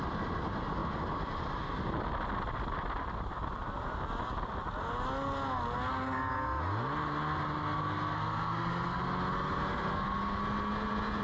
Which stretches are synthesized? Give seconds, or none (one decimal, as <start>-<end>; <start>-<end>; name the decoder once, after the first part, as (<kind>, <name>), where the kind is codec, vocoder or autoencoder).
7.8-9.0 (codec, SNAC)